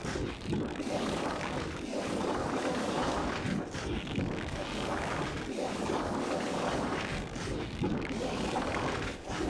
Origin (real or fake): fake